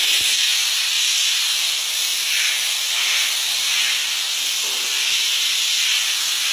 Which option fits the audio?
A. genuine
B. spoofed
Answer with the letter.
A